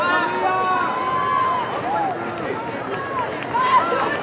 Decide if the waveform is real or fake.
real